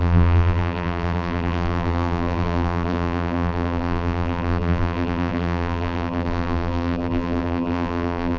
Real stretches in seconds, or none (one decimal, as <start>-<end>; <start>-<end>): none